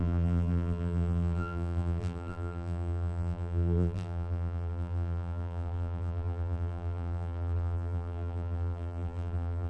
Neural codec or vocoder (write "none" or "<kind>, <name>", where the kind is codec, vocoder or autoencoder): vocoder, BigVGAN v2